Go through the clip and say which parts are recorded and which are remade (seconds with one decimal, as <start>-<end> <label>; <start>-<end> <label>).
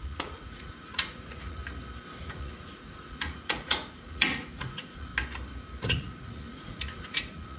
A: 0.0-1.6 remade; 1.6-2.2 recorded; 2.2-5.1 remade; 5.1-5.8 recorded; 5.8-7.6 remade